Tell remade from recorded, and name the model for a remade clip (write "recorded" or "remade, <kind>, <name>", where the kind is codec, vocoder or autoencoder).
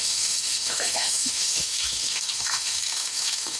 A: remade, autoencoder, DAC-VAE